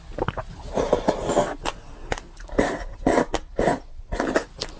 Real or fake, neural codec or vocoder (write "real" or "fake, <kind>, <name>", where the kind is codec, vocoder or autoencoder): real